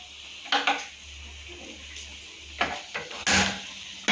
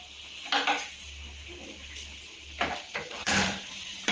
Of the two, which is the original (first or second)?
first